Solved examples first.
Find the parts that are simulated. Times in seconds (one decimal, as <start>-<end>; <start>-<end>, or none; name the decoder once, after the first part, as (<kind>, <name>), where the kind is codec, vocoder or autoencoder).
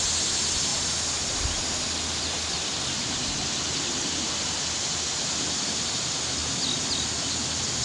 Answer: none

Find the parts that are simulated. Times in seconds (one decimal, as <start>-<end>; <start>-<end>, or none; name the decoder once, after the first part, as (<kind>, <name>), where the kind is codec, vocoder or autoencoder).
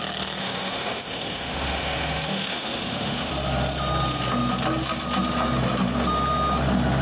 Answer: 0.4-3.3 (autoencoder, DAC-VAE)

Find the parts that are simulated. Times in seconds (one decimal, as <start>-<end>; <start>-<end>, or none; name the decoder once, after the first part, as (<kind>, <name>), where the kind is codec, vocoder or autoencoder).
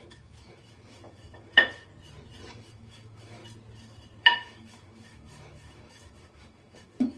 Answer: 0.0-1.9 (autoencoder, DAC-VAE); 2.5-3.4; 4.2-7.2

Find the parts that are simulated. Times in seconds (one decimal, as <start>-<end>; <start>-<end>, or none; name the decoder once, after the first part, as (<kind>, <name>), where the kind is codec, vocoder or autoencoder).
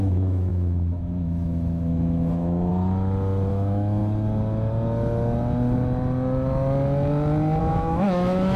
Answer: 0.0-2.7 (autoencoder, DAC-VAE); 3.5-4.0; 7.6-8.6